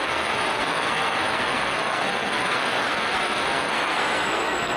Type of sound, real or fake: fake